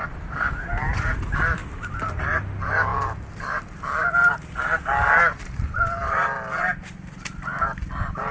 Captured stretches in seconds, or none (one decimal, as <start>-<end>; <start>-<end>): 1.1-1.6; 2.2-6.6; 7.6-8.3

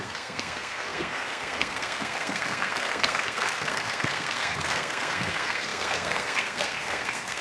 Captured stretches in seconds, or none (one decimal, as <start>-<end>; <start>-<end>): none

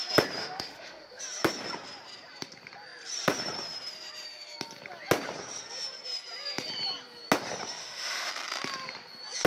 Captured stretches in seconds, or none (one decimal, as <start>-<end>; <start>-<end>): 0.0-0.4; 1.2-7.8; 8.3-9.5

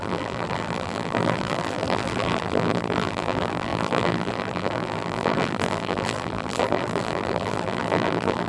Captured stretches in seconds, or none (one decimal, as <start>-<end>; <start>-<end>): none

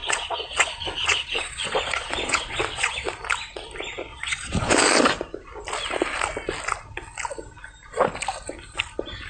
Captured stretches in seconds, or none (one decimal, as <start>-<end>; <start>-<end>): 3.1-4.1; 4.7-9.3

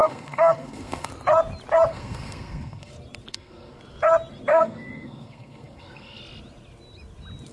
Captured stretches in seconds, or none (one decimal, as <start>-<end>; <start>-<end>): 1.1-1.9; 2.9-3.3; 3.8-4.5; 6.2-7.5

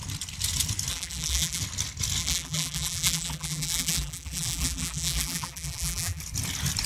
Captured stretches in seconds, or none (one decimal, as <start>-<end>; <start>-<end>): 0.0-0.9; 1.6-2.2; 6.2-6.9

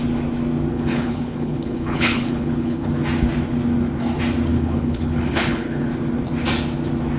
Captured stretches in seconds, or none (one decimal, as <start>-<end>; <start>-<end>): 0.0-0.7; 2.9-4.5; 5.8-7.2